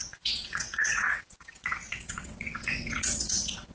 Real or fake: fake